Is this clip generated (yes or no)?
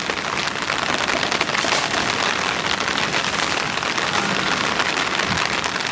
no